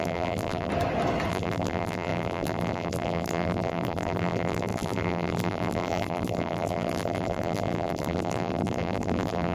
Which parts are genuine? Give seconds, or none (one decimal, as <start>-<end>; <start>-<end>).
0.7-1.3